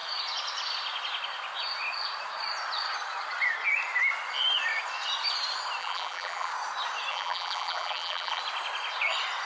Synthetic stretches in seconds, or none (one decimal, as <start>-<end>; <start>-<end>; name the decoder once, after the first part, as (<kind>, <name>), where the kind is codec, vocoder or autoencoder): 5.8-6.5 (vocoder, BigVGAN v2); 7.1-8.4